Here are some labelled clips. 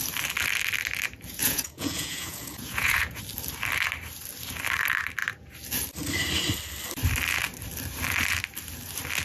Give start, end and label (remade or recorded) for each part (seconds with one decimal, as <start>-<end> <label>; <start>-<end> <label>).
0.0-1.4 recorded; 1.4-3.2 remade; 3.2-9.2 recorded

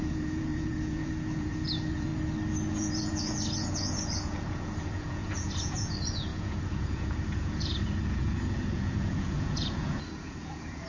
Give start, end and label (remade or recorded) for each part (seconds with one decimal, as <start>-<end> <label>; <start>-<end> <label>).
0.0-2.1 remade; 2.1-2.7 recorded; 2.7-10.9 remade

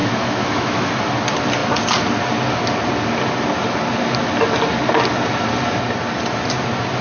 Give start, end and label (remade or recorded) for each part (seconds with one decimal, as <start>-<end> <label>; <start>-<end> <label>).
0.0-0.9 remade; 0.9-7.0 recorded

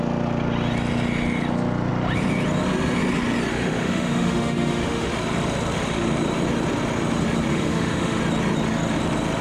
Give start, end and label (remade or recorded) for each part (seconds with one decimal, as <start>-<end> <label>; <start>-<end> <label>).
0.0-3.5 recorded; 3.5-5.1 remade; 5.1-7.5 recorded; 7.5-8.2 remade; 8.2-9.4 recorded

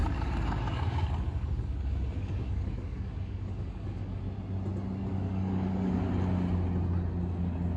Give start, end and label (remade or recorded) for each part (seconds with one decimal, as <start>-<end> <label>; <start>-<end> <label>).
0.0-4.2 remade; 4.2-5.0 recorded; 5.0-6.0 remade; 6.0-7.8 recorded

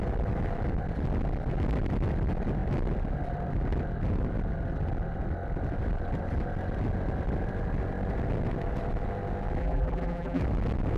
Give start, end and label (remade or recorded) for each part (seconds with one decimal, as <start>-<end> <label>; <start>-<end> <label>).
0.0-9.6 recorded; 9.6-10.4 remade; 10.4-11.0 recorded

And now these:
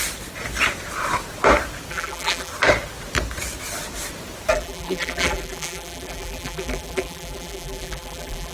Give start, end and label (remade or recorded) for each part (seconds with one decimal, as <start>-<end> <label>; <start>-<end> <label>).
0.0-1.9 recorded; 1.9-2.5 remade; 2.5-4.5 recorded; 4.5-8.5 remade

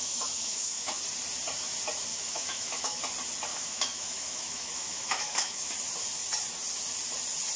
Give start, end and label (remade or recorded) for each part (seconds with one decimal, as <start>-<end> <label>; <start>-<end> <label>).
0.0-1.0 remade; 1.0-2.1 recorded; 2.1-3.0 remade; 3.0-3.5 recorded; 3.5-5.7 remade; 5.7-7.6 recorded